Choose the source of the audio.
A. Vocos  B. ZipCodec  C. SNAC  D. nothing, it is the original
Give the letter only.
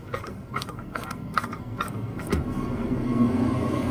C